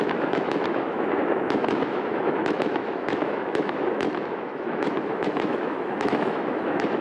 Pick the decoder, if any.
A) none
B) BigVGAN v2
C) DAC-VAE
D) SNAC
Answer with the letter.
C